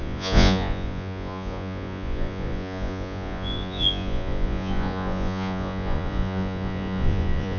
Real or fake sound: fake